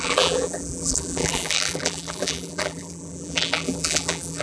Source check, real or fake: fake